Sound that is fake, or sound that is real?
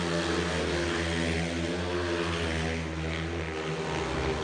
real